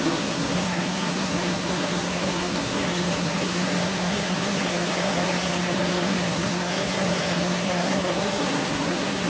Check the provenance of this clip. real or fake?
fake